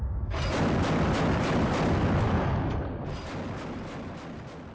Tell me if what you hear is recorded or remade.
recorded